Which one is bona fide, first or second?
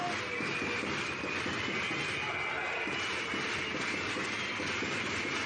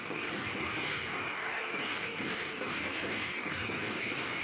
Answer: first